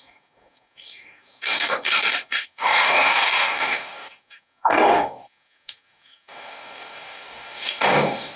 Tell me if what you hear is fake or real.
fake